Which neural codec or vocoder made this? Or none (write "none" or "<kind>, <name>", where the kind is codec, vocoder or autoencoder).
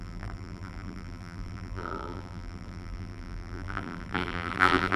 vocoder, BigVGAN v2